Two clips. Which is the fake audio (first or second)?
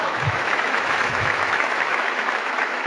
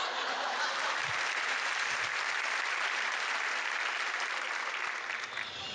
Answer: first